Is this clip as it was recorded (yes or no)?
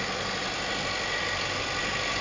yes